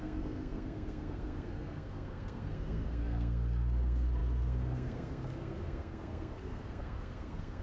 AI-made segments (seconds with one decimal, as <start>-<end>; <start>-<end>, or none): 0.0-7.6